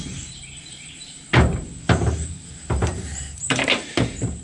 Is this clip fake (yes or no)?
yes